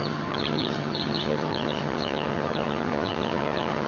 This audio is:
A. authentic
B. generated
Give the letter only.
B